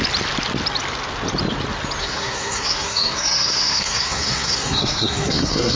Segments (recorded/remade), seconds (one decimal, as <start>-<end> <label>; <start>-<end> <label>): 0.0-2.0 recorded; 2.0-5.8 remade